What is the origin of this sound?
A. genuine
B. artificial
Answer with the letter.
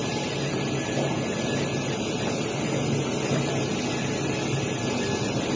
A